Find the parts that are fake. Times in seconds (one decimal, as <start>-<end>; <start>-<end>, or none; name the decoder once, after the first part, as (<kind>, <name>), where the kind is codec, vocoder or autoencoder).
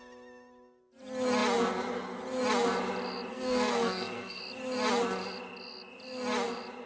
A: 3.3-4.4 (codec, SNAC)